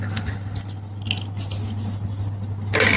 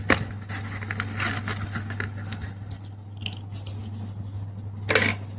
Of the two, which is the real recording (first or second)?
second